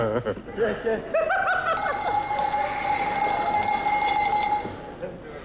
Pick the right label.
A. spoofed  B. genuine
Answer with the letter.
B